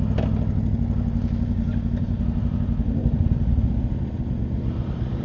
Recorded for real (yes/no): yes